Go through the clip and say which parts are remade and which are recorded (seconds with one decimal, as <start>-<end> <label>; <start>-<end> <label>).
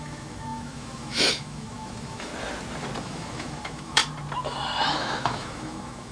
0.0-2.3 remade; 2.3-3.0 recorded; 3.0-4.0 remade; 4.0-4.9 recorded; 4.9-6.1 remade